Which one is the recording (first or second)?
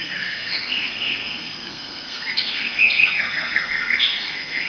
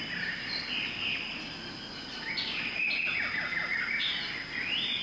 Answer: second